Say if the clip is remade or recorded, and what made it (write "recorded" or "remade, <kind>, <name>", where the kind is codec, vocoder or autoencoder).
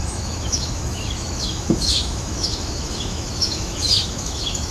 remade, autoencoder, DAC-VAE